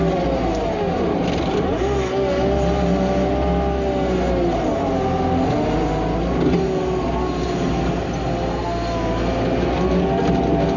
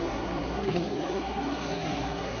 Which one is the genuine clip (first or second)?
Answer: first